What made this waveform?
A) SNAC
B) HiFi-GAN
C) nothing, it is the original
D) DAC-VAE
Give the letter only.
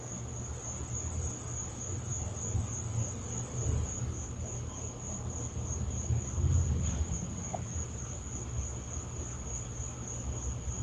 C